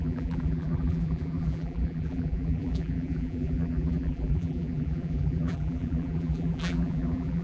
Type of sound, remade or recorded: remade